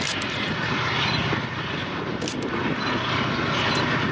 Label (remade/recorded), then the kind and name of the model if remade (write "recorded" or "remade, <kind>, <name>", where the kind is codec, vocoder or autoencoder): recorded